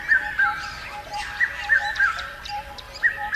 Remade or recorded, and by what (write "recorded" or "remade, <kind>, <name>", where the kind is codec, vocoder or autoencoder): remade, vocoder, BigVGAN v2